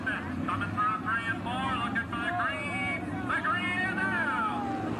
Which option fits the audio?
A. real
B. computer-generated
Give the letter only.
A